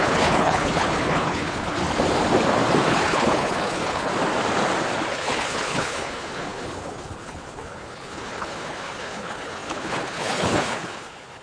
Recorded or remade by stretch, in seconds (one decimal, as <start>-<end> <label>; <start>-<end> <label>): 0.0-1.8 remade; 1.8-2.9 recorded; 2.9-4.1 remade; 4.1-5.1 recorded; 5.1-11.4 remade